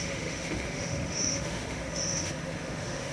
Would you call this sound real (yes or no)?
no